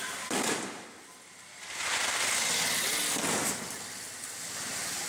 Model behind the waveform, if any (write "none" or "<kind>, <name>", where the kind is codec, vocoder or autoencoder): none